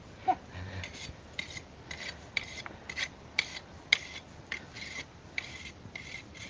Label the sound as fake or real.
real